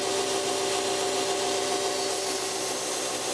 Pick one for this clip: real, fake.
real